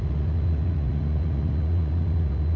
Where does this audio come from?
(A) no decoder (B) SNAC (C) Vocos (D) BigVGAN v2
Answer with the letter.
C